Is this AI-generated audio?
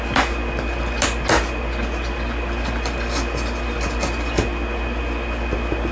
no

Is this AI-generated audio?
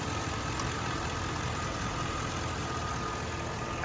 no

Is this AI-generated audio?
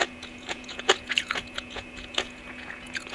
yes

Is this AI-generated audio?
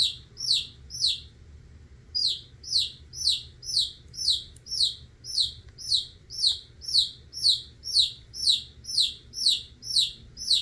no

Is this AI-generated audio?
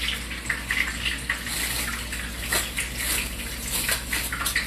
no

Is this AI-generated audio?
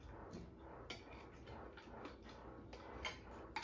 no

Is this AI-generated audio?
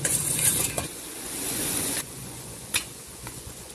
yes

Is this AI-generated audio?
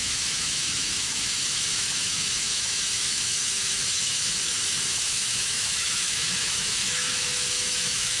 yes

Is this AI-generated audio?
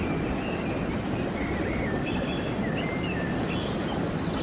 no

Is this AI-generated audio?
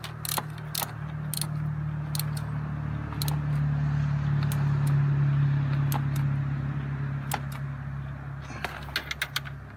no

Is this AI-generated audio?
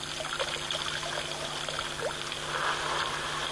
no